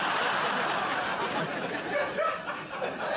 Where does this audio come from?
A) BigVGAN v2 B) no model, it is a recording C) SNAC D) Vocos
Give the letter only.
B